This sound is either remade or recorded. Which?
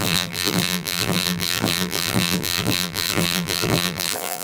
remade